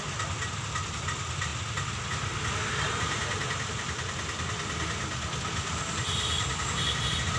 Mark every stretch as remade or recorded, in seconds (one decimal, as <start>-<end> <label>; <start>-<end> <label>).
0.0-7.4 recorded